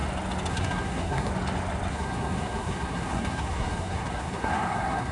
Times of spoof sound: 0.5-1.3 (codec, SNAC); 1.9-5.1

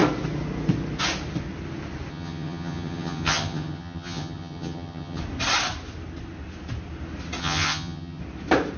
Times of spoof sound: 2.1-5.2 (vocoder, HiFi-GAN); 7.4-8.2

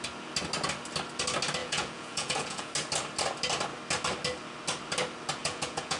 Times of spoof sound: 1.6-2.7 (vocoder, Vocos); 5.4-6.0